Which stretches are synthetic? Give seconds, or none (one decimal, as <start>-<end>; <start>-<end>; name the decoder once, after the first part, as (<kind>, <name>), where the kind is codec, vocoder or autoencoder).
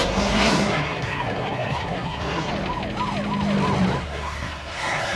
0.0-2.5 (codec, SNAC); 4.0-5.2